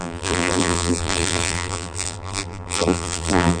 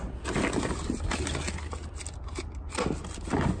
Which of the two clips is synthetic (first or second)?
first